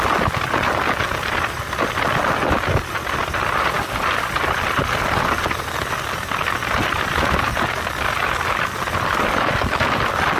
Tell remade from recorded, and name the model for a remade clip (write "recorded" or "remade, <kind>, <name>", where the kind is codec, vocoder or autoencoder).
recorded